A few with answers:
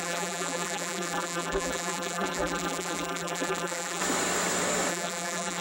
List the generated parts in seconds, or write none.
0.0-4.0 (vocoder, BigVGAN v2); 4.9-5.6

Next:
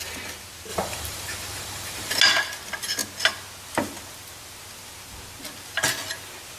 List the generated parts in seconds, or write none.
0.7-2.2 (vocoder, BigVGAN v2)

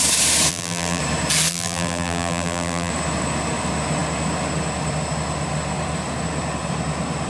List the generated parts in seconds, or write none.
0.5-1.0 (vocoder, BigVGAN v2); 1.5-2.9